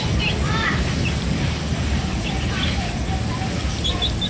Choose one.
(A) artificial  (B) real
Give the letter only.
B